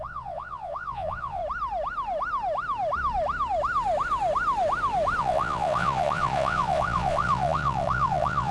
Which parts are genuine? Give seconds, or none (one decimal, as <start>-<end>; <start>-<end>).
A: 1.4-5.2